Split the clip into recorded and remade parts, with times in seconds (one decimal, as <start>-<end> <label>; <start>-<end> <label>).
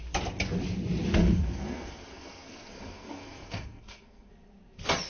0.0-1.2 recorded; 1.2-4.3 remade; 4.3-5.1 recorded